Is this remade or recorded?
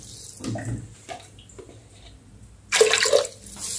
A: recorded